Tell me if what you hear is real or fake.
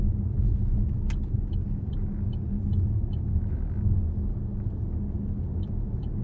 real